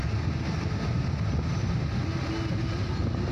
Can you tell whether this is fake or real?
real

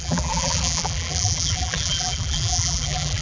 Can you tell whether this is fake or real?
fake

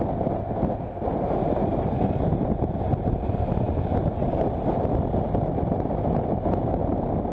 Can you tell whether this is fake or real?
real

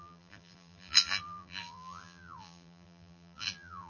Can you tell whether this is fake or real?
fake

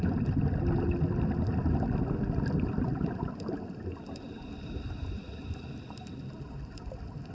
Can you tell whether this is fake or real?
real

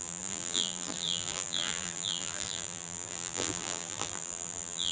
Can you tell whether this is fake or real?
fake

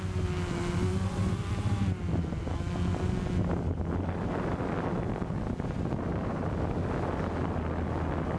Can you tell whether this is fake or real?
real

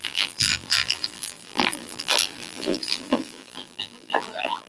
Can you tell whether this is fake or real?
fake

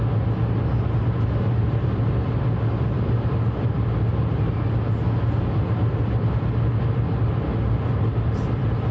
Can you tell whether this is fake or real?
real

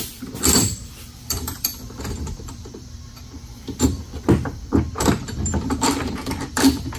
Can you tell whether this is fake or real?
fake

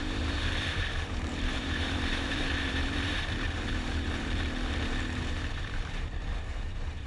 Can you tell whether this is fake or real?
fake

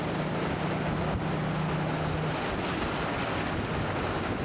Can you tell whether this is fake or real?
real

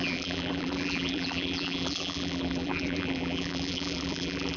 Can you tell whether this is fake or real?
fake